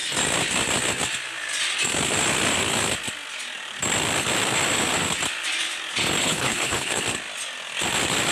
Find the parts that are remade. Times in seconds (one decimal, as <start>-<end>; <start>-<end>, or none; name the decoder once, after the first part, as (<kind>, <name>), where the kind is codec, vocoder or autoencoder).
6.2-7.0 (codec, HILCodec)